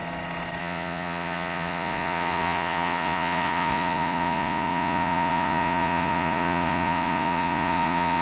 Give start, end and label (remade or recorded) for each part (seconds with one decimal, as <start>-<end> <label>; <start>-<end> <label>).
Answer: 0.0-0.6 recorded; 0.6-8.2 remade